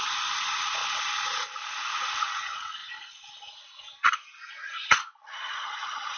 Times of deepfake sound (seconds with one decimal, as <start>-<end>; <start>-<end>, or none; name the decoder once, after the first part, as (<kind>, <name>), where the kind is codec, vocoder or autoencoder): 0.0-0.8 (vocoder, Vocos); 1.6-2.8; 4.5-6.2